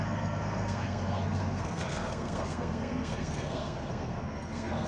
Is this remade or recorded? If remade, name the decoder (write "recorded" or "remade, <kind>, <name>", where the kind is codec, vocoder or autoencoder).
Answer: remade, codec, SNAC